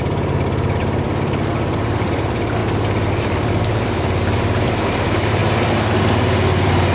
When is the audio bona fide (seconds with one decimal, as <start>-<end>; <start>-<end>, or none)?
5.4-6.0

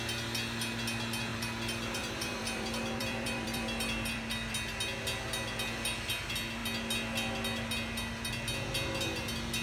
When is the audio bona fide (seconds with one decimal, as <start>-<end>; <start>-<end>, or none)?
0.0-1.3; 4.5-9.6

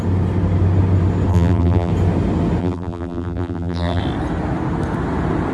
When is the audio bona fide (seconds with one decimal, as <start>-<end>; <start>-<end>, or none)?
0.0-1.3; 1.9-2.6; 4.0-5.5

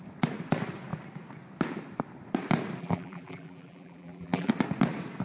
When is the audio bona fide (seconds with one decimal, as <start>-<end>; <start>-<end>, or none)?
0.0-2.8; 4.5-5.2

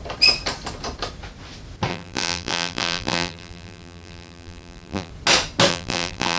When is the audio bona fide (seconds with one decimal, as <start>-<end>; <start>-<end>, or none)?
0.0-1.9; 5.1-5.7

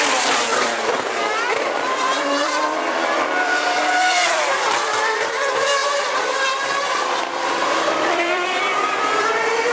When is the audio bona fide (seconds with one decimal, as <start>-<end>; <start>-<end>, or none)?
5.8-7.2

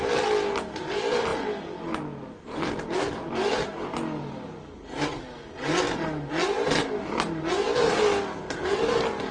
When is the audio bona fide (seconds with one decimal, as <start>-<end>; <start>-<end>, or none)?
0.0-9.3